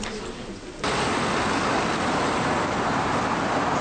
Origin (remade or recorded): recorded